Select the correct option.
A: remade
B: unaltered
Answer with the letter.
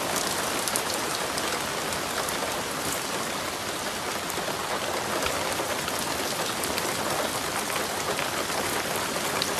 B